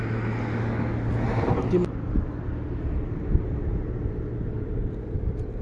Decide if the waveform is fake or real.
real